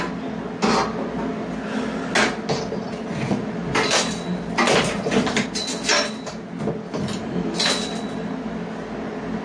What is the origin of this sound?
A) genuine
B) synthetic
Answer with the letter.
A